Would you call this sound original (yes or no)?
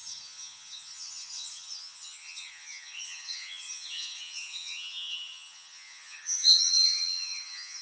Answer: no